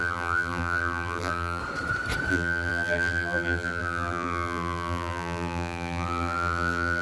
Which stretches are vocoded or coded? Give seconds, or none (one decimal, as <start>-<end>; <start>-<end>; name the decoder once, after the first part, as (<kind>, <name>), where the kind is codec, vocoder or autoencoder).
0.0-1.6 (vocoder, BigVGAN v2); 2.3-7.0